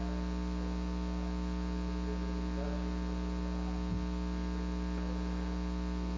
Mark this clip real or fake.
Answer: real